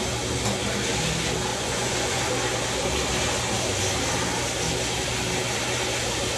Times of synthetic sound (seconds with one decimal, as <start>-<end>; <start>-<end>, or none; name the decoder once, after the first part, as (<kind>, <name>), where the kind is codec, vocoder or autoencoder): 1.5-2.2 (vocoder, Vocos)